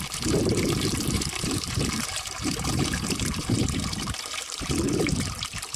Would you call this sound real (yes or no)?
no